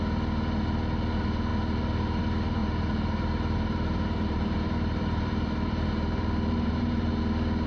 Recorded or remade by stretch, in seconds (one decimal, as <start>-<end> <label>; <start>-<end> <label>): 0.0-2.6 recorded; 2.6-7.2 remade; 7.2-7.7 recorded